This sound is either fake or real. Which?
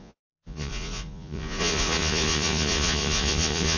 fake